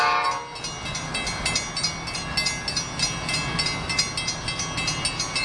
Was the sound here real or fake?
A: real